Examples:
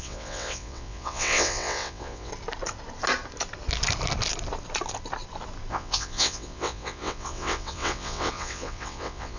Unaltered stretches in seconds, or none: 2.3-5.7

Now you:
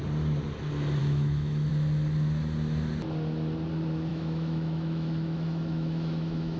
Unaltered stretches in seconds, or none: 0.0-1.0; 1.7-4.1

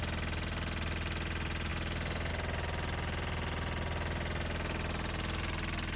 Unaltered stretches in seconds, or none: 0.0-6.0

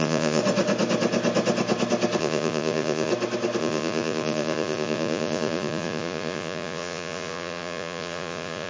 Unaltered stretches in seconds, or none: 0.4-2.2; 3.1-3.6